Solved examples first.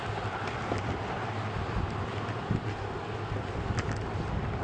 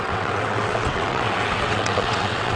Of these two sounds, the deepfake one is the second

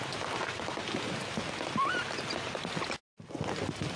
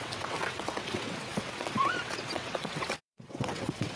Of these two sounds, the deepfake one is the second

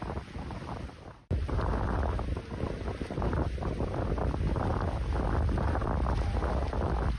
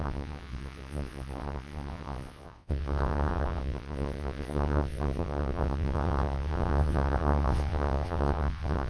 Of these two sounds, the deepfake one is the second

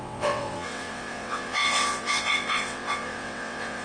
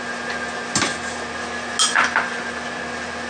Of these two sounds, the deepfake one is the first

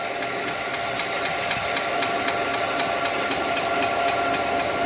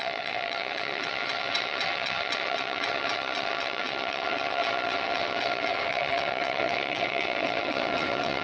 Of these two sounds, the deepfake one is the second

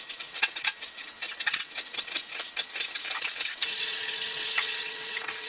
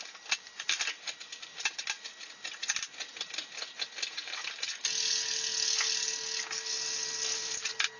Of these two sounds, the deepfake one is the first